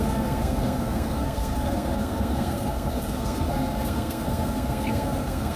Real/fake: fake